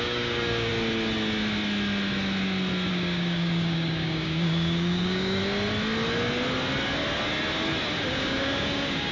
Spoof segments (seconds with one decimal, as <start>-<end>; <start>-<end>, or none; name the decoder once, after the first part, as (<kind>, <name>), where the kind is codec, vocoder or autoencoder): 0.0-0.7 (codec, DAC); 2.9-5.4; 8.1-9.1